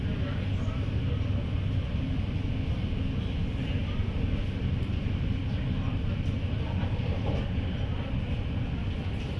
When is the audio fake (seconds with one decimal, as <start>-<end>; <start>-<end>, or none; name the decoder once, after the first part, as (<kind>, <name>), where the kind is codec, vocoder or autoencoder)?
none